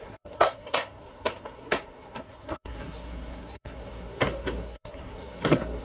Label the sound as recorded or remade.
remade